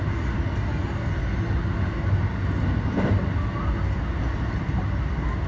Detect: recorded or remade recorded